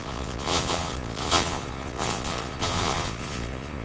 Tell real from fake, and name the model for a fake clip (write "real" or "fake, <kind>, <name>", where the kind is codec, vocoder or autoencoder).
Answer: fake, vocoder, Vocos